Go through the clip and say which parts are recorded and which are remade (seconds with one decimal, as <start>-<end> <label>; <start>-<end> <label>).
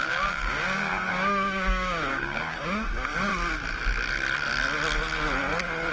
0.0-3.3 remade; 3.3-5.9 recorded